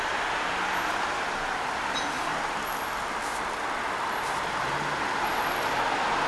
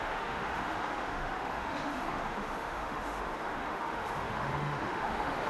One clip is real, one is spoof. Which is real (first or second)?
first